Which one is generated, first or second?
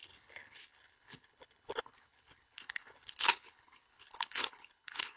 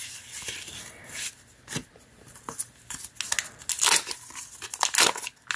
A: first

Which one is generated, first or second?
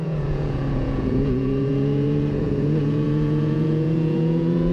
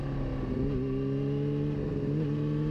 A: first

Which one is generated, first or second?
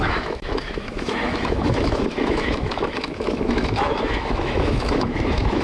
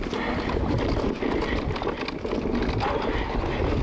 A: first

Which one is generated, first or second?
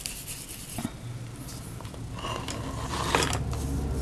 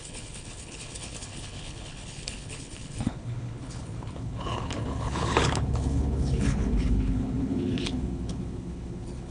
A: second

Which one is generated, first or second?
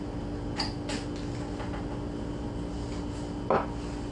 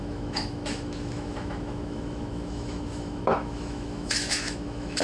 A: second